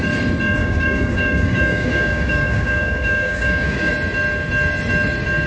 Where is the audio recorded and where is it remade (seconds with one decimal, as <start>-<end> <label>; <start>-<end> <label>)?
0.0-0.6 recorded; 0.6-3.9 remade; 3.9-5.5 recorded